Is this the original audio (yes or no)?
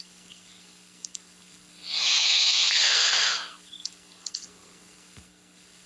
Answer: no